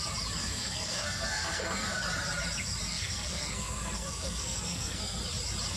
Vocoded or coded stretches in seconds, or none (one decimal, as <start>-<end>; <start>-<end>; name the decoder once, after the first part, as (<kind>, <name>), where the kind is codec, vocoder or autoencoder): 0.4-2.0 (codec, SNAC); 2.9-5.2